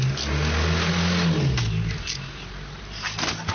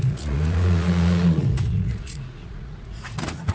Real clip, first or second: first